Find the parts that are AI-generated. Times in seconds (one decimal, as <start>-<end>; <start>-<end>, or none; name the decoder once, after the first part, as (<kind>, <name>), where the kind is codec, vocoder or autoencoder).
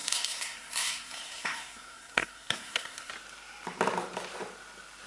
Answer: 0.0-3.1 (codec, SNAC)